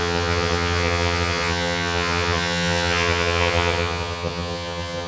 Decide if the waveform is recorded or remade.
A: remade